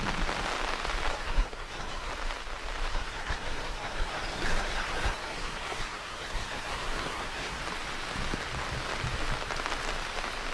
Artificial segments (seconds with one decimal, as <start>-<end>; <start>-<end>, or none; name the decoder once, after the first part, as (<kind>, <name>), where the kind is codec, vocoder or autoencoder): 1.1-2.1 (codec, SNAC); 2.9-7.6